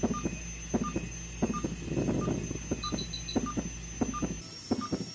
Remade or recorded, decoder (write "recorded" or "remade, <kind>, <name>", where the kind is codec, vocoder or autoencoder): recorded